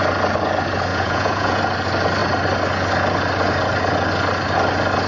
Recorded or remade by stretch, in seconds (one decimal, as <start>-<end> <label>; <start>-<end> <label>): 0.0-0.9 recorded; 0.9-1.6 remade; 1.6-5.1 recorded